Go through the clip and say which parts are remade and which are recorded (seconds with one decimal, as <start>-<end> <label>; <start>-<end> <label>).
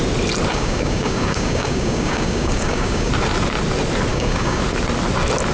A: 0.0-0.5 recorded; 0.5-3.1 remade; 3.1-4.1 recorded; 4.1-4.6 remade; 4.6-5.5 recorded